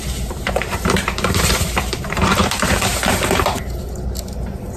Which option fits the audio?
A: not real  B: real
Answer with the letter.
A